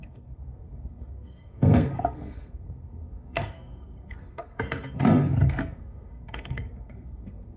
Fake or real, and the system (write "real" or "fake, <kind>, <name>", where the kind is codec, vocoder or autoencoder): fake, codec, SNAC